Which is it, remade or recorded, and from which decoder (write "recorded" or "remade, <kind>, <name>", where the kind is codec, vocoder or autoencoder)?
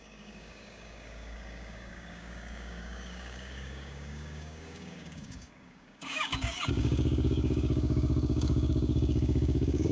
remade, codec, DAC